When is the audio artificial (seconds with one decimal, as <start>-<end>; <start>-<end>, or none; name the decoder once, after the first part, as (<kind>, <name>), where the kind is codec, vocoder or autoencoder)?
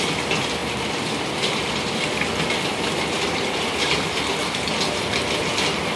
0.6-4.2 (vocoder, BigVGAN v2)